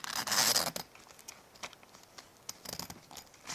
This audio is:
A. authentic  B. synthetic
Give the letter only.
A